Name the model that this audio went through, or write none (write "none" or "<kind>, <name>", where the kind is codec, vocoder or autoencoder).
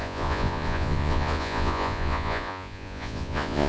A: vocoder, Vocos